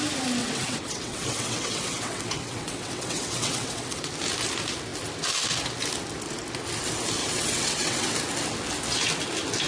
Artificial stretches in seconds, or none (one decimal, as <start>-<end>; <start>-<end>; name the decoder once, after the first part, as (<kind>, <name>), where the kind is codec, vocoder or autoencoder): 0.4-4.1 (vocoder, WaveNeXt); 7.2-8.1

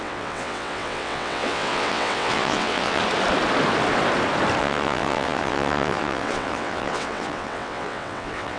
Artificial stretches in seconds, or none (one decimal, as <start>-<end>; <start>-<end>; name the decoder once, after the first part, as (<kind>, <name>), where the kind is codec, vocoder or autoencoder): 0.0-3.0 (vocoder, WaveNeXt); 4.6-8.6